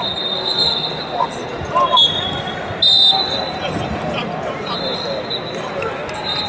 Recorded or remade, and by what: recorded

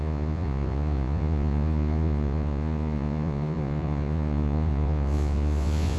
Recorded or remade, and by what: remade, vocoder, Vocos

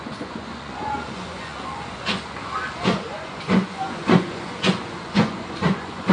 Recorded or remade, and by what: remade, vocoder, Vocos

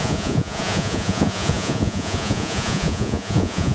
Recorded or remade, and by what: remade, vocoder, Vocos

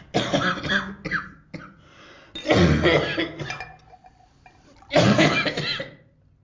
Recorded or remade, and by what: recorded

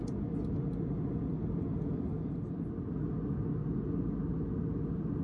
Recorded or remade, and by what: recorded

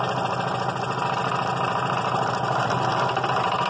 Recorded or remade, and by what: recorded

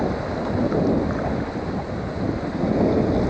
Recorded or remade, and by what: recorded